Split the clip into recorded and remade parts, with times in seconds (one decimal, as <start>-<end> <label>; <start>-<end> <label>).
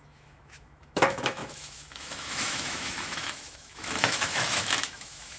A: 0.0-5.4 remade